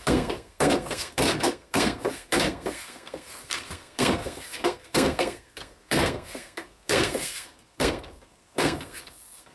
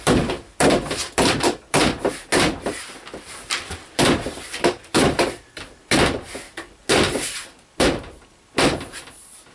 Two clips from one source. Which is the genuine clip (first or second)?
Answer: second